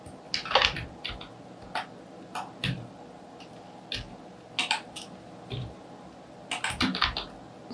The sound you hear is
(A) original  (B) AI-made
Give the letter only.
A